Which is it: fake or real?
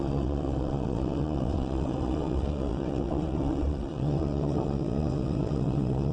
fake